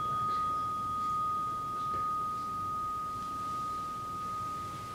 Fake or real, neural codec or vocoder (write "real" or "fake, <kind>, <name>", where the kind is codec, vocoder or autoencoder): real